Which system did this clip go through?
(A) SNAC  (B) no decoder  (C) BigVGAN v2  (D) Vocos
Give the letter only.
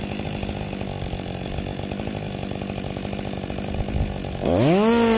B